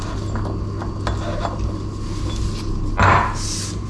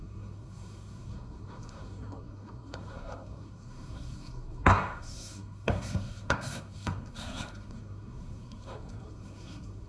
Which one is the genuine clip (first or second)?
first